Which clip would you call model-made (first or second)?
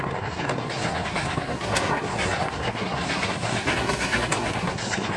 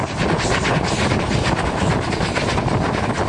first